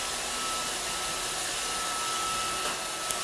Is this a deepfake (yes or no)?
no